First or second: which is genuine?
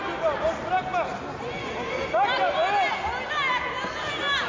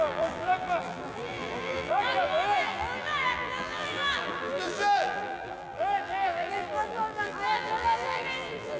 first